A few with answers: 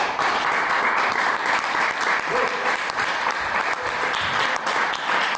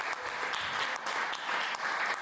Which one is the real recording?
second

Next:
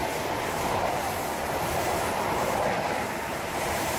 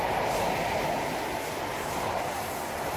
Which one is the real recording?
second